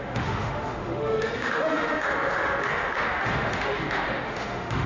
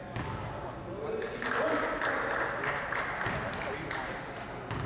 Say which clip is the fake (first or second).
first